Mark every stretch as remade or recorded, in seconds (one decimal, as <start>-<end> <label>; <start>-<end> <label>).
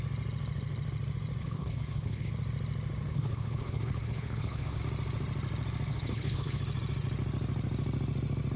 0.0-1.4 recorded; 1.4-2.3 remade; 2.3-3.1 recorded; 3.1-4.8 remade; 4.8-5.9 recorded; 5.9-6.6 remade; 6.6-8.6 recorded